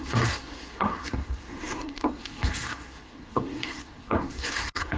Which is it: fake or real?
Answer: fake